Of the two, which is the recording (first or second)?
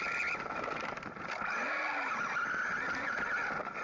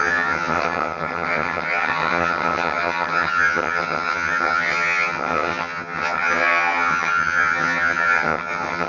first